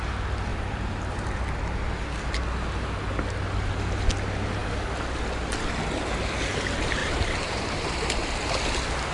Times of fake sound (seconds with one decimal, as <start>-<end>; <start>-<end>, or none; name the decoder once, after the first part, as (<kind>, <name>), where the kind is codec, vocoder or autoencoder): 0.5-1.4 (vocoder, BigVGAN v2); 7.0-7.9